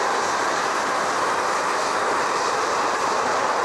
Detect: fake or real fake